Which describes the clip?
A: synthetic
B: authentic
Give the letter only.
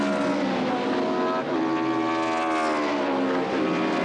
B